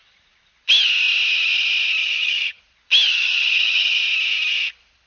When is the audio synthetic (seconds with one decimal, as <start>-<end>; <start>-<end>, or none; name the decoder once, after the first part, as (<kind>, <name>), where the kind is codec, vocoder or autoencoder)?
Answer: 2.0-2.6 (vocoder, HiFi-GAN); 3.1-4.0